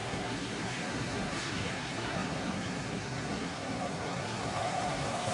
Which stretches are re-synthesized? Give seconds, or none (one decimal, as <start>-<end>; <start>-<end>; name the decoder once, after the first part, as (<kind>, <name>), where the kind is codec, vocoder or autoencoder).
0.0-5.3 (codec, SNAC)